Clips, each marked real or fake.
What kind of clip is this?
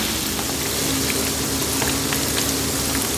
real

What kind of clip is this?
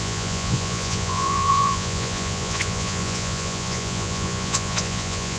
fake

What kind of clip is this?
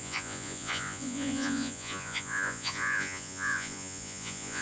fake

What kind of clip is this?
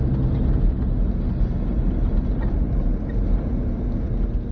real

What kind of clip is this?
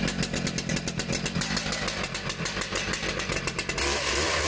real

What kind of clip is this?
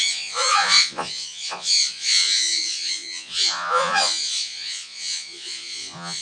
fake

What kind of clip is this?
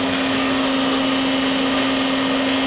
real